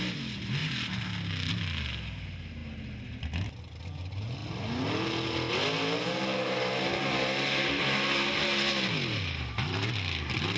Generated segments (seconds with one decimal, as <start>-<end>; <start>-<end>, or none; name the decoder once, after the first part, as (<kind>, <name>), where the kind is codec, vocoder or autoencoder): none